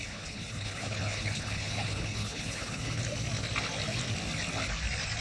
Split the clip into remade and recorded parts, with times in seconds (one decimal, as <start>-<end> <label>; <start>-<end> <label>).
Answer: 0.0-3.0 remade; 3.0-5.2 recorded